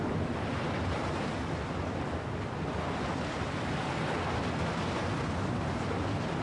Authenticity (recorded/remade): recorded